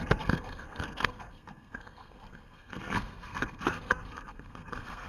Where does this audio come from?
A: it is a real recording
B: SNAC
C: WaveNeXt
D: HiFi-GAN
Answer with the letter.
B